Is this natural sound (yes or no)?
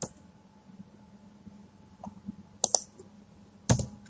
yes